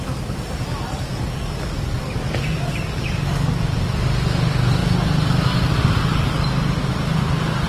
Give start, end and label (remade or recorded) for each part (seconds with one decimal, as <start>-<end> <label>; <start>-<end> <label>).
0.0-1.1 recorded; 1.1-3.5 remade; 3.5-7.7 recorded